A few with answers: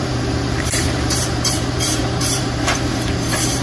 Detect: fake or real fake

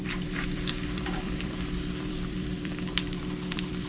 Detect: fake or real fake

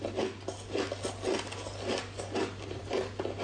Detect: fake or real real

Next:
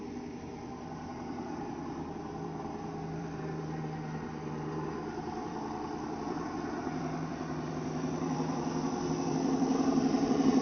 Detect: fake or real fake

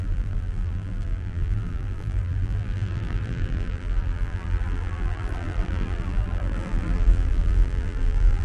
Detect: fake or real fake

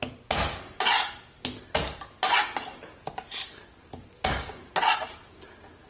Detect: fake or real real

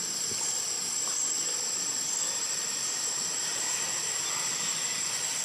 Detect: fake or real real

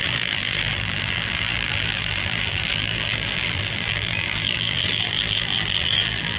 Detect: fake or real fake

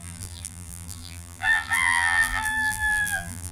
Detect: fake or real fake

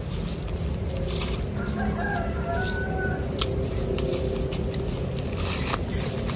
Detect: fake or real real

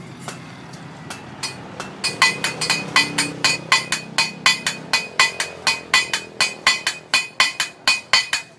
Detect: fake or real real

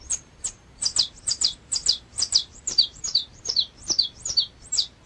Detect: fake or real fake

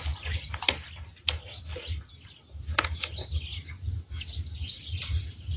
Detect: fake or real real